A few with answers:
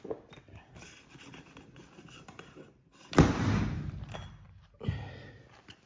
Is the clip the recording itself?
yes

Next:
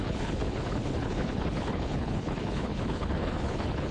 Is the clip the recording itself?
no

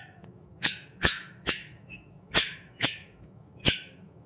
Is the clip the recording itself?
no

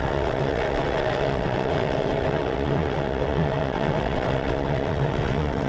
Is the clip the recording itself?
no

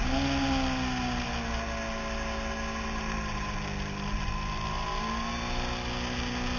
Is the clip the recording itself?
yes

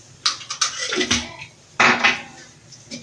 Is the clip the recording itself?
yes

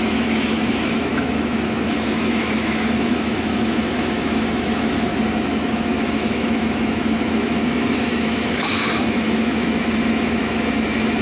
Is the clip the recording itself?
no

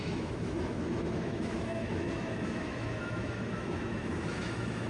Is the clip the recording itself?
no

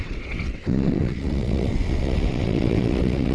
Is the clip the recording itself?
no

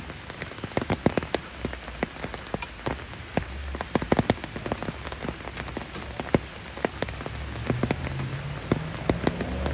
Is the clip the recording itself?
yes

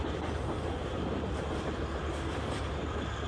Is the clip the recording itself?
yes